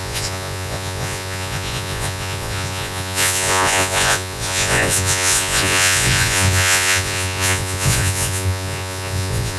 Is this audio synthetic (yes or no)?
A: yes